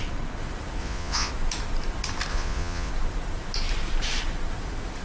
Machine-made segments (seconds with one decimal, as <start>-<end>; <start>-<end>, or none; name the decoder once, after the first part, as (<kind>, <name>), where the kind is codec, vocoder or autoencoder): 0.8-1.3 (vocoder, Vocos); 2.3-2.9